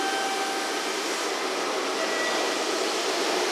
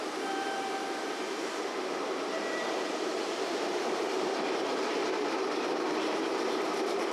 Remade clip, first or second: second